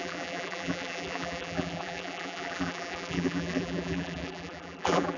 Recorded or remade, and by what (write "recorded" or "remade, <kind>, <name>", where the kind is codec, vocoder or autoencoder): remade, vocoder, BigVGAN v2